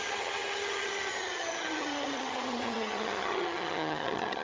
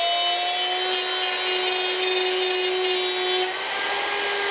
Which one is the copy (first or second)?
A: first